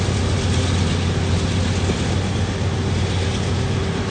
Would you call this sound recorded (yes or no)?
yes